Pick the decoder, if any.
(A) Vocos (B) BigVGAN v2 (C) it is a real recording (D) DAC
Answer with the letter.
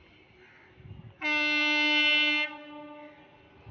C